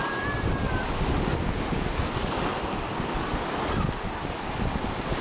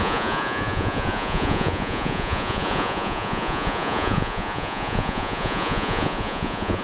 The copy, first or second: second